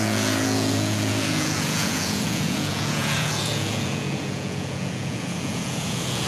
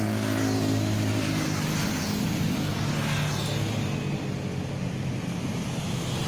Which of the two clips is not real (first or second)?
first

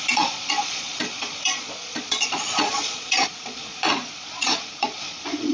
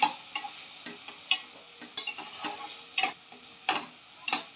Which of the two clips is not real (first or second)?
first